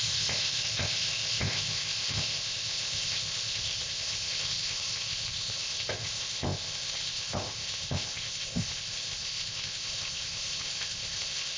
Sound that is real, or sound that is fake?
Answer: fake